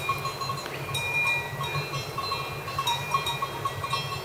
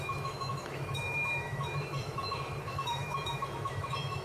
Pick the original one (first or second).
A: first